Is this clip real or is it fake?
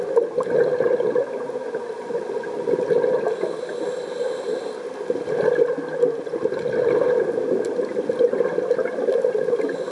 real